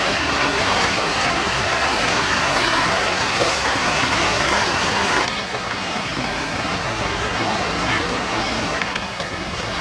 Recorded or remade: remade